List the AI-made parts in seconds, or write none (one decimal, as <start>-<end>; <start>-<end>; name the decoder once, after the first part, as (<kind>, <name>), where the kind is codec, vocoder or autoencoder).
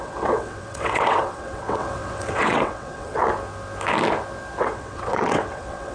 0.0-3.2 (vocoder, WaveNeXt); 4.6-5.9